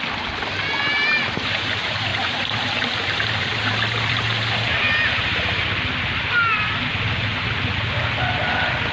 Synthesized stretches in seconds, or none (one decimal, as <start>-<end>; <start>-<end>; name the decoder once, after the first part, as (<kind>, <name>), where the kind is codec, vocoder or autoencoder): 2.1-4.8 (vocoder, BigVGAN v2)